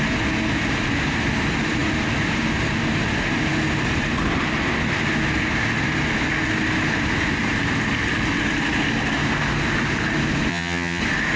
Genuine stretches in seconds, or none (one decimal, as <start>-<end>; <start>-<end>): 0.0-10.5; 11.0-11.4